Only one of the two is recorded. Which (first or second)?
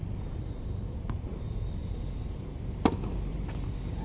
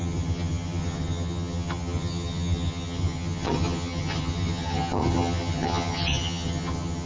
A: first